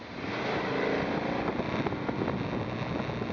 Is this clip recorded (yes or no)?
yes